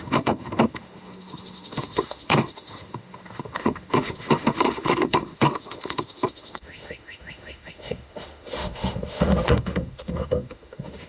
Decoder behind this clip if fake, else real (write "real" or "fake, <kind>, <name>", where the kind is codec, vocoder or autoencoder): fake, autoencoder, DAC-VAE